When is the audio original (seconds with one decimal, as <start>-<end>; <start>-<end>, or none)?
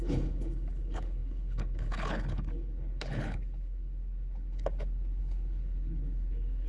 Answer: none